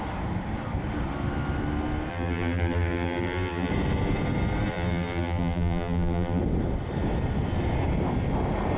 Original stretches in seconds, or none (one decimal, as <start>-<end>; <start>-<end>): 0.0-2.1; 3.7-4.7; 6.4-8.8